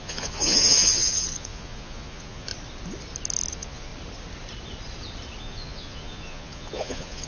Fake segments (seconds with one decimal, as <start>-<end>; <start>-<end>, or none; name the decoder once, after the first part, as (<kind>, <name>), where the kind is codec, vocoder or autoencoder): 0.0-2.5 (vocoder, Vocos); 3.5-3.9; 5.4-7.3